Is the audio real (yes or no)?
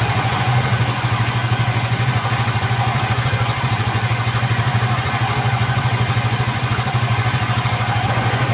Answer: no